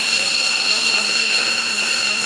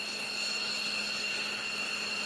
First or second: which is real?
second